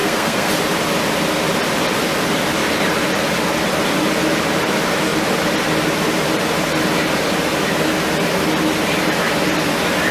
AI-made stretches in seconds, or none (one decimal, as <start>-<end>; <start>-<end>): 0.0-0.5